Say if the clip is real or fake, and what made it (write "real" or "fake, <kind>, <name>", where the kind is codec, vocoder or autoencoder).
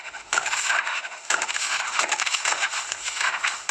fake, autoencoder, DAC-VAE